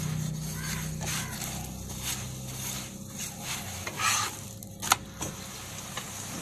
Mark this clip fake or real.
real